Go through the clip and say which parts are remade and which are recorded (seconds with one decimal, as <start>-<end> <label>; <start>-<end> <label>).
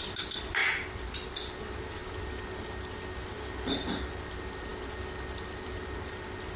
0.0-4.7 remade; 4.7-5.7 recorded; 5.7-6.6 remade